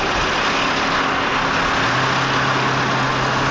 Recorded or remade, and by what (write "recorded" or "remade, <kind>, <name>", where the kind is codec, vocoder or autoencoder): recorded